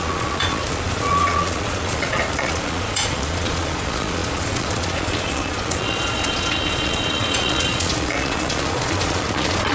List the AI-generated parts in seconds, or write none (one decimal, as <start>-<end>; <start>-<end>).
0.0-9.7